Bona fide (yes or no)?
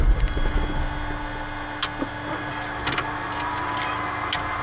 yes